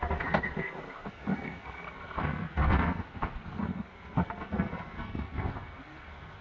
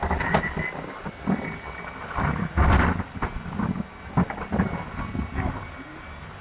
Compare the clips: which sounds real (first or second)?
second